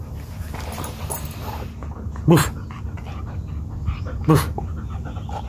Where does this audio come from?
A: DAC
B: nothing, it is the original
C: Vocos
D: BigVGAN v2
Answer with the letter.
B